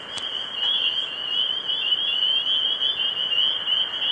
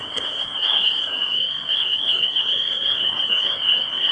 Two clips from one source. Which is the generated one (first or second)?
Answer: second